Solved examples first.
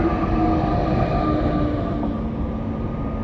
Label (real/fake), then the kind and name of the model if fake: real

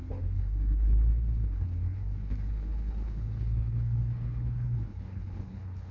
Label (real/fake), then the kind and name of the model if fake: fake, codec, HILCodec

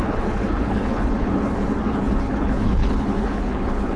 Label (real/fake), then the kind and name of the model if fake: fake, codec, HILCodec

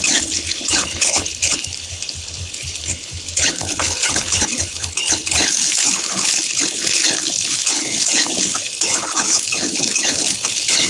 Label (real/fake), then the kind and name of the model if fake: fake, codec, HILCodec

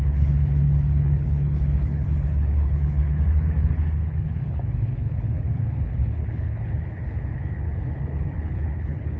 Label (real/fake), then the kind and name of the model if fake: fake, codec, HILCodec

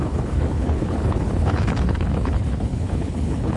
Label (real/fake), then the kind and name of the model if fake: fake, codec, HILCodec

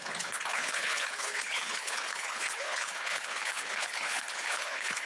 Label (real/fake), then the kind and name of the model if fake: fake, codec, HILCodec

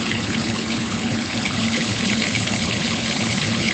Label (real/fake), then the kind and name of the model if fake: fake, codec, HILCodec